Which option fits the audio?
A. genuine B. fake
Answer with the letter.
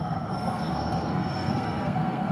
B